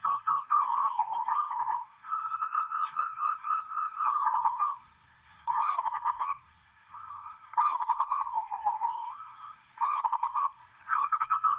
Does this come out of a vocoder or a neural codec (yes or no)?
yes